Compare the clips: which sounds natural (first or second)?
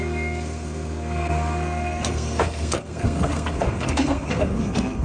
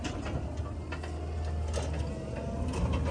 second